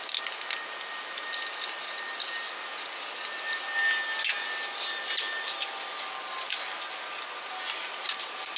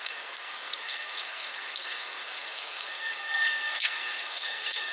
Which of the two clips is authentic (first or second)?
first